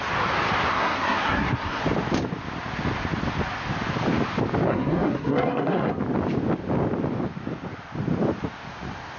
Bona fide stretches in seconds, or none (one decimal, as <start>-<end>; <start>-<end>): 0.0-0.7; 1.8-4.7; 6.0-9.2

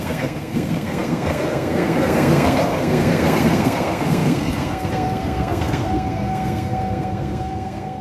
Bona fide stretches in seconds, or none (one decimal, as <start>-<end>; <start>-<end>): none

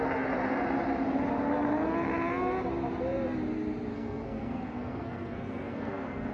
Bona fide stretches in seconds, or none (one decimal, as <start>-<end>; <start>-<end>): 0.0-3.9